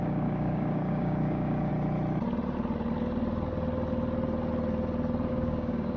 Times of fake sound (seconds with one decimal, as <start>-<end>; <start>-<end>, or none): 0.0-1.7; 5.3-6.0

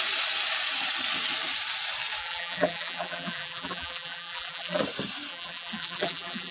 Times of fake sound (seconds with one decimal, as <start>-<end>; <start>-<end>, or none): 2.2-4.8; 5.3-6.5

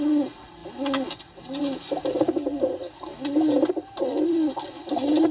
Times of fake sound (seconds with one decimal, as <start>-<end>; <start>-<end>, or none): none

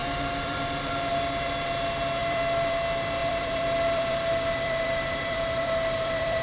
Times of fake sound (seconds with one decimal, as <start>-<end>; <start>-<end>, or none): 0.0-0.9; 2.2-2.7; 3.2-6.4

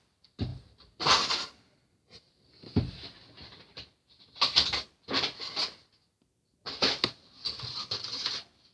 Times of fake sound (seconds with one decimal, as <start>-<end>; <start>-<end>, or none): none

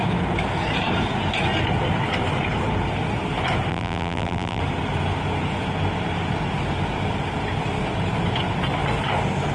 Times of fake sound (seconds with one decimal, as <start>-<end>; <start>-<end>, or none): 3.7-4.6